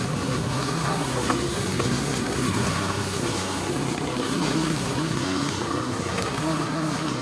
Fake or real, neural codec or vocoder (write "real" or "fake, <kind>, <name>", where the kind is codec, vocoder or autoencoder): fake, codec, SNAC